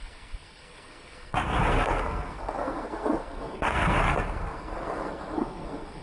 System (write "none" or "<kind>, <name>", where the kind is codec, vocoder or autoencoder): codec, SNAC